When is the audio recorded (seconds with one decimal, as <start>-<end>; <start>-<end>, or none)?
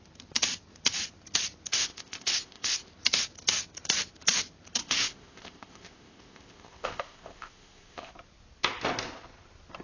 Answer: 0.0-1.7; 2.9-4.8; 8.1-9.8